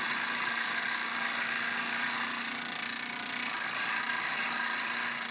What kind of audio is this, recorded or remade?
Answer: recorded